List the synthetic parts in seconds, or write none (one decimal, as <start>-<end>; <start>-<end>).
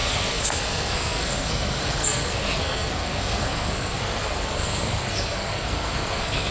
0.0-6.5